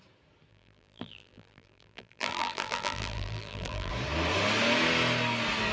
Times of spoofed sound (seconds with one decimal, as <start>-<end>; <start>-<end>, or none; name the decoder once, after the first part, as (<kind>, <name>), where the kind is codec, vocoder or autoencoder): 0.5-3.9 (vocoder, BigVGAN v2)